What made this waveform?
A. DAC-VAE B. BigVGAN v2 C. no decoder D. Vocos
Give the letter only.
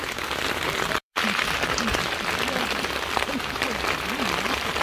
B